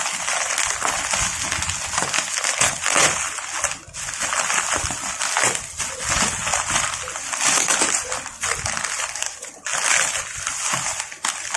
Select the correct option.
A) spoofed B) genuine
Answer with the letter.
B